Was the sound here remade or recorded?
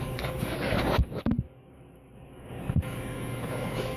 remade